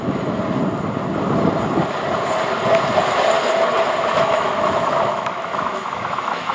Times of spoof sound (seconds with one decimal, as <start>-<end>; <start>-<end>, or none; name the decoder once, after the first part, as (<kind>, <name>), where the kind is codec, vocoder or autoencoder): 0.0-0.4 (autoencoder, DAC-VAE); 4.2-6.5

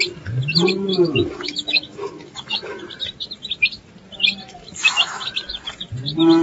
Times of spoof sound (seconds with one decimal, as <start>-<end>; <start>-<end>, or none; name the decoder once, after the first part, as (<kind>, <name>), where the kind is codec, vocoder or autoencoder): 0.9-2.8 (autoencoder, DAC-VAE); 4.4-5.4

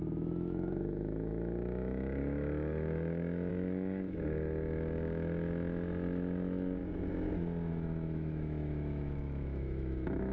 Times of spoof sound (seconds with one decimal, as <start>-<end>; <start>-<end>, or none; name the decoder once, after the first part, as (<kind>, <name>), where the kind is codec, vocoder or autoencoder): 0.0-6.8 (autoencoder, DAC-VAE); 7.7-10.3

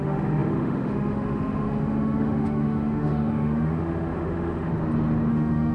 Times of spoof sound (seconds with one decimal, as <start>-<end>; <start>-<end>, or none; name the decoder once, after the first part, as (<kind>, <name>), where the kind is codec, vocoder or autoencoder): 0.0-4.7 (autoencoder, DAC-VAE); 5.3-5.7

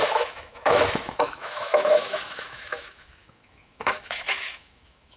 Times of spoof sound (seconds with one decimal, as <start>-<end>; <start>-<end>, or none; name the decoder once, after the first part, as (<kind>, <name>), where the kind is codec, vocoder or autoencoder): 0.0-5.2 (autoencoder, DAC-VAE)

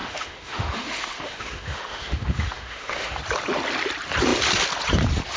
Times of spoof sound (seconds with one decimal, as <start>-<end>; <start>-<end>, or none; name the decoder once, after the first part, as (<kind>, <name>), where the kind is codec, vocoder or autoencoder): 0.0-3.2 (autoencoder, DAC-VAE)

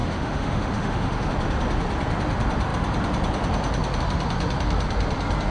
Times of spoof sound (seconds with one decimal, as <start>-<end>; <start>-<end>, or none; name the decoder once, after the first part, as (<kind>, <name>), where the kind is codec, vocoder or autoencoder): 0.0-1.3 (autoencoder, DAC-VAE)